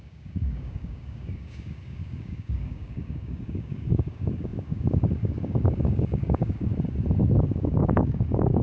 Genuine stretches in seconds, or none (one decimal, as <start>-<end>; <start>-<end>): 6.7-7.5